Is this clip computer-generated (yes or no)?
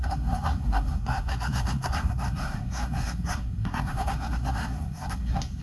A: yes